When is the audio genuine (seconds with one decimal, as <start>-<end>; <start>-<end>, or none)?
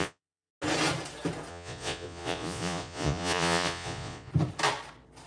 0.5-1.5; 4.3-5.3